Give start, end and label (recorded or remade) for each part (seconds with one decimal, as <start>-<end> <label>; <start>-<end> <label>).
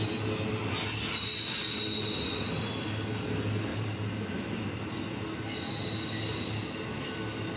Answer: 0.0-3.7 recorded; 3.7-4.8 remade; 4.8-7.6 recorded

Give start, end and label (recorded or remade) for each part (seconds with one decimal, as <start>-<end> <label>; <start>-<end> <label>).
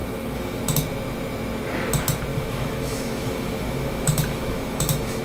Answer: 0.0-0.6 remade; 0.6-2.3 recorded; 2.3-5.2 remade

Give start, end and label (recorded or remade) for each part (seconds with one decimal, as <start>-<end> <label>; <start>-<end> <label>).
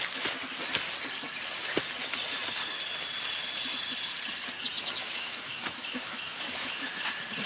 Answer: 0.0-5.0 recorded; 5.0-7.1 remade; 7.1-7.5 recorded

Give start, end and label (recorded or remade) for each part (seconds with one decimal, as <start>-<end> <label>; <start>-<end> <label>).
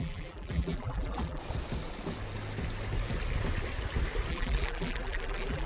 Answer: 0.0-1.4 remade; 1.4-4.3 recorded; 4.3-5.7 remade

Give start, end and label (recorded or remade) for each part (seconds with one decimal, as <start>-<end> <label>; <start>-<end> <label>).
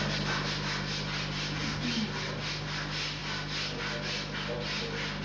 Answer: 0.0-5.2 recorded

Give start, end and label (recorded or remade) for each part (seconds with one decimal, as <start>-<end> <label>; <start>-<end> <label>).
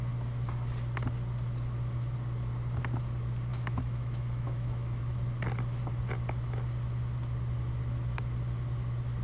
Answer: 0.0-3.5 recorded; 3.5-5.0 remade; 5.0-9.2 recorded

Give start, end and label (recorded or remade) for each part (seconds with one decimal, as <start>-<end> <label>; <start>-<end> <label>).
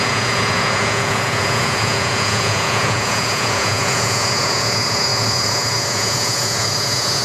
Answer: 0.0-7.2 remade